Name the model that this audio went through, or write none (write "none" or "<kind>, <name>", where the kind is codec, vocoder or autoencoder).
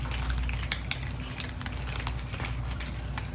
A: none